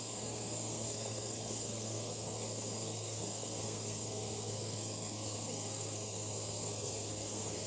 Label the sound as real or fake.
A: fake